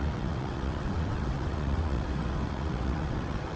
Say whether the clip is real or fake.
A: fake